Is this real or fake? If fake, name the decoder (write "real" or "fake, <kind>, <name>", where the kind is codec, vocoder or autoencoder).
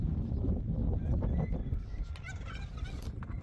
real